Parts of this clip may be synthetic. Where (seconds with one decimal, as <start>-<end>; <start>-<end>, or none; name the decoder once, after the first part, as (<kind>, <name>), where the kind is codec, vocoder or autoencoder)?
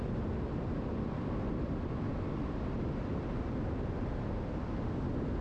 none